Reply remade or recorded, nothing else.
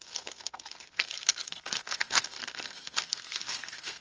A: remade